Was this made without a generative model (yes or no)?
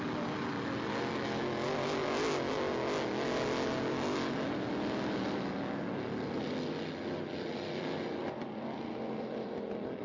yes